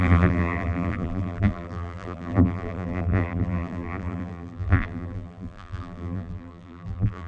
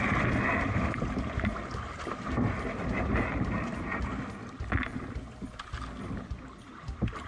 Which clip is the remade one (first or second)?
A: first